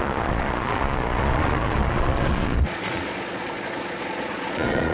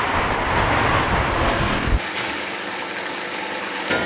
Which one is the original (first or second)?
second